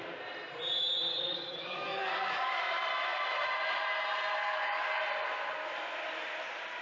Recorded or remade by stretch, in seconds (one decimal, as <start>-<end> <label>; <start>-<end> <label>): 0.0-1.1 recorded; 1.1-2.6 remade; 2.6-4.4 recorded; 4.4-5.0 remade; 5.0-6.8 recorded